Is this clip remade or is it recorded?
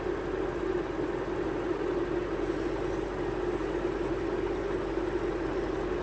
recorded